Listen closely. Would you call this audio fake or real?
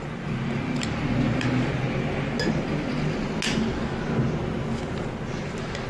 real